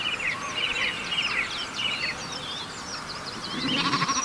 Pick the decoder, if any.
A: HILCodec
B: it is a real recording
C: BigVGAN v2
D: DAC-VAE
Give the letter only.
C